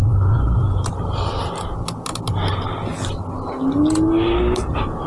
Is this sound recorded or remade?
recorded